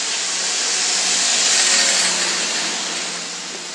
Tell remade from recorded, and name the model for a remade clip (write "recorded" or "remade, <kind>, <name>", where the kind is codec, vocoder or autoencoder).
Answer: recorded